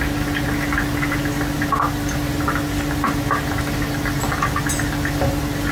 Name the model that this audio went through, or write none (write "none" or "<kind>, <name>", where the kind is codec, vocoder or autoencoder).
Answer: none